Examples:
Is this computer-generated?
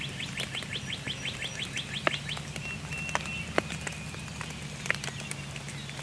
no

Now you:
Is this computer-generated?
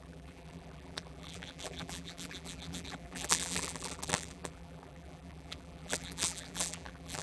yes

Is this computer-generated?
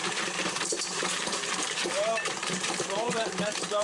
yes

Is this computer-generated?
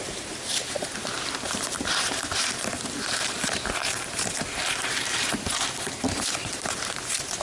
yes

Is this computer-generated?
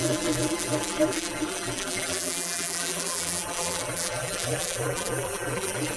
yes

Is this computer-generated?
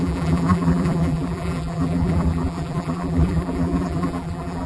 yes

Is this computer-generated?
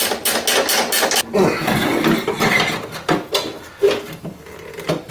no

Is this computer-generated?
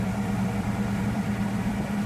yes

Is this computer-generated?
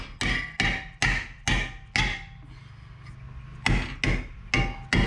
no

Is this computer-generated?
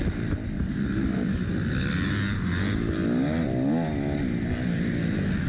no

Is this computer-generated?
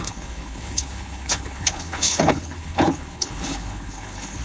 yes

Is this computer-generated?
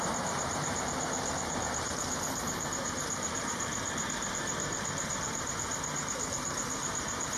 yes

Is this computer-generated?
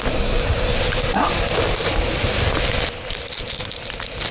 no